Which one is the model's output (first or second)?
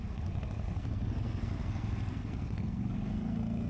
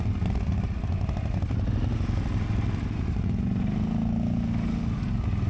first